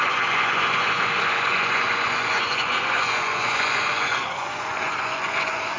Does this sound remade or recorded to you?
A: remade